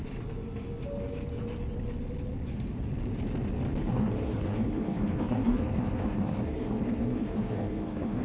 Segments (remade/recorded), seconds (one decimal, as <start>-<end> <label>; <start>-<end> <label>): 0.0-3.8 recorded; 3.8-8.2 remade